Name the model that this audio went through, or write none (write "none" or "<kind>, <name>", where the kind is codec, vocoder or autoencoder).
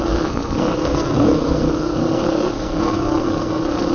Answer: codec, SNAC